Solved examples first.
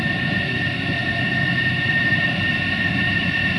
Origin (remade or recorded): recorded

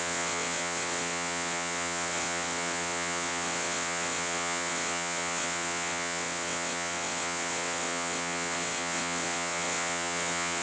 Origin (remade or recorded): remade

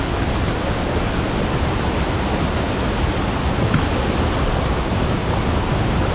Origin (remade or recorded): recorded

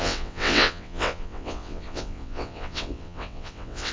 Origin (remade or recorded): remade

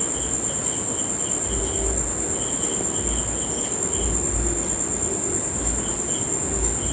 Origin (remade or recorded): recorded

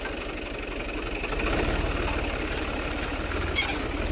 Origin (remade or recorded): recorded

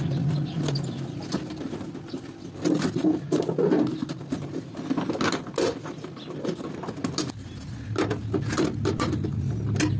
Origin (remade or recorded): recorded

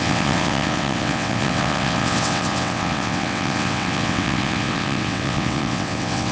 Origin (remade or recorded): remade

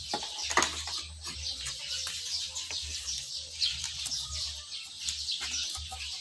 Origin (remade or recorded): recorded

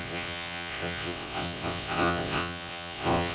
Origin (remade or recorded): remade